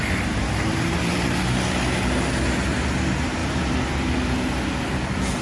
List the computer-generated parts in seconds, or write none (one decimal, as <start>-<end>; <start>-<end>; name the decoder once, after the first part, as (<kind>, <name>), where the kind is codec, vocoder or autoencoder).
none